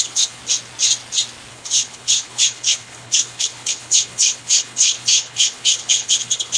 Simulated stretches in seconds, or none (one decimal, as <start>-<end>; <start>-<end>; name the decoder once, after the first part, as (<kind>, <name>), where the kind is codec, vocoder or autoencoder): 0.0-0.4 (codec, HILCodec); 1.5-6.6

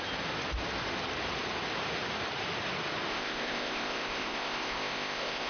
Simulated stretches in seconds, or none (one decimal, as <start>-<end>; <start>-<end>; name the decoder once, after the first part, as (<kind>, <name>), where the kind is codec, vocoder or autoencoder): 3.1-5.5 (codec, ZipCodec)

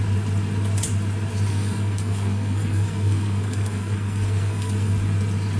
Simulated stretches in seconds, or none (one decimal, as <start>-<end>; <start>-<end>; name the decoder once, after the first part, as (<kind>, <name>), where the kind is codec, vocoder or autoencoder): 1.5-4.9 (codec, SNAC)

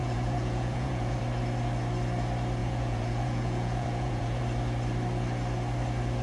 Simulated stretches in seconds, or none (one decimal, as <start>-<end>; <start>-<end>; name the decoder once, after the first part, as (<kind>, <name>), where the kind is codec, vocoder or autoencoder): 0.0-1.2 (vocoder, Vocos); 2.6-4.4

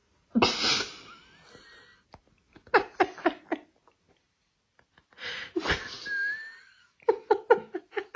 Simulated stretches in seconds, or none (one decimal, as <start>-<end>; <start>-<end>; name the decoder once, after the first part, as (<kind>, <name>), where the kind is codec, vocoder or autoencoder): none

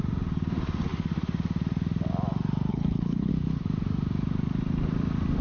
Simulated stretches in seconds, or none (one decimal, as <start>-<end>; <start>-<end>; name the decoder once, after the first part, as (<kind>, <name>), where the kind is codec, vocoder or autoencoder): 2.7-3.3 (codec, HILCodec)